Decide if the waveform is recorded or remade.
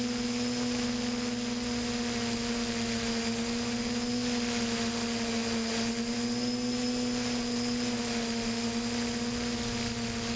recorded